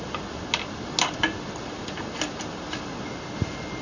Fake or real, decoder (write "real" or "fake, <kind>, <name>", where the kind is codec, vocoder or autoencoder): real